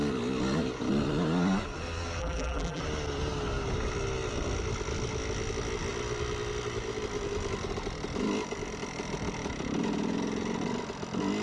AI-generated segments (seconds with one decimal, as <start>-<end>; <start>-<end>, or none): 2.2-2.8